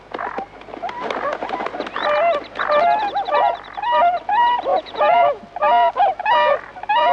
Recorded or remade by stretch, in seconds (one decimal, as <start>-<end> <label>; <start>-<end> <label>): 0.0-4.7 recorded; 4.7-5.4 remade; 5.4-7.1 recorded